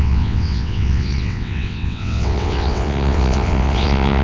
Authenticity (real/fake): fake